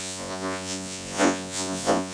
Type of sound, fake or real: fake